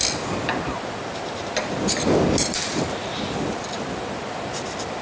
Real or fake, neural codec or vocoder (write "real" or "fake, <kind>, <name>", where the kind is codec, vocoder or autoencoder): fake, vocoder, BigVGAN v2